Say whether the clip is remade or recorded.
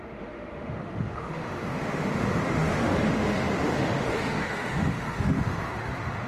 remade